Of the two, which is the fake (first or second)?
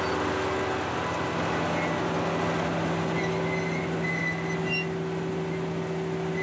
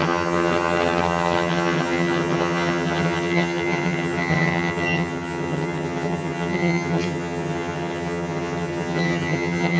second